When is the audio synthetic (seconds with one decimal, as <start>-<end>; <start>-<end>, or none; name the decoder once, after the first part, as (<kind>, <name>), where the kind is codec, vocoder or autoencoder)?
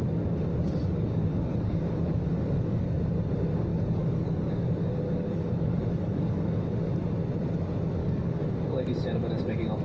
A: 0.5-3.0 (codec, DAC); 3.7-6.9; 8.0-8.5